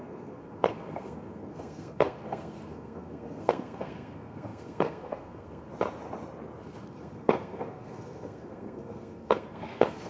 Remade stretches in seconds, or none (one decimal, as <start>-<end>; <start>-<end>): 0.0-5.7; 6.6-10.1